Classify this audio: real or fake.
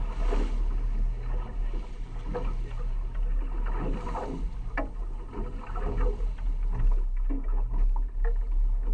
real